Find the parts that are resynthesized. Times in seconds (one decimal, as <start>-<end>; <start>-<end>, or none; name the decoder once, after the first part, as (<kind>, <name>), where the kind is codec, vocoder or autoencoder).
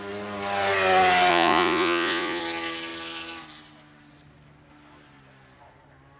1.3-2.4 (vocoder, Vocos)